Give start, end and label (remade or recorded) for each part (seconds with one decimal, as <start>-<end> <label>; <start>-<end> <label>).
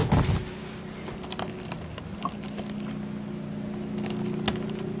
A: 0.0-5.0 recorded